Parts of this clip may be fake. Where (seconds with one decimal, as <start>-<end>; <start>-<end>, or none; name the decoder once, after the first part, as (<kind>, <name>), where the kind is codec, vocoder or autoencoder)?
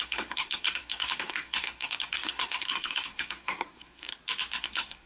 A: 0.0-4.1 (codec, SNAC); 4.6-5.1